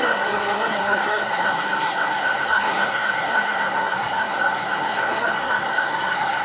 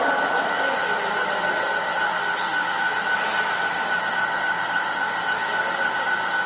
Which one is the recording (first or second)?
second